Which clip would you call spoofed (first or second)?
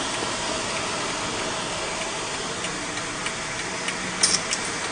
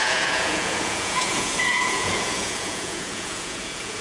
second